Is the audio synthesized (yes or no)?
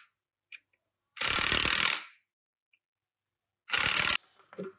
no